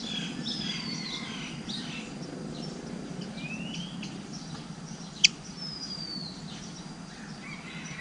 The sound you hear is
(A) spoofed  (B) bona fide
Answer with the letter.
B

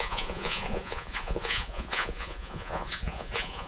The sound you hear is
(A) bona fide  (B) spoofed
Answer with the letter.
B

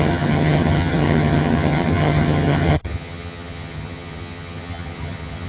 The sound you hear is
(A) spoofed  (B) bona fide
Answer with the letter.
A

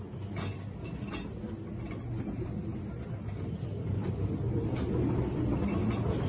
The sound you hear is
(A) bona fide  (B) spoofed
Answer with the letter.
A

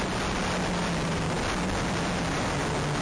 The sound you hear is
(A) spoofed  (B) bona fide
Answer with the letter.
B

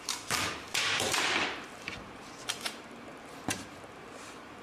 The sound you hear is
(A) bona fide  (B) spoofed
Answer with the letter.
B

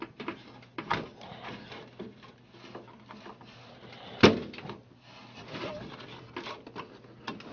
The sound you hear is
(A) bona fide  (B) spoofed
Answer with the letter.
A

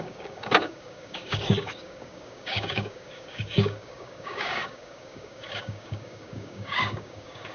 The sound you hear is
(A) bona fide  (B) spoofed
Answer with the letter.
B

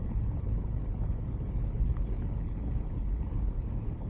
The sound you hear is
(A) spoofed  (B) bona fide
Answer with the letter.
A